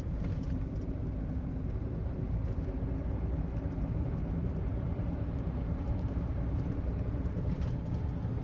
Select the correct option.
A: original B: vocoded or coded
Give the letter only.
B